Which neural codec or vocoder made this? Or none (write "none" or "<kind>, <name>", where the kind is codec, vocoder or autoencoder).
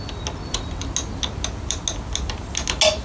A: none